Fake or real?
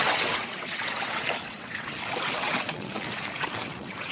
fake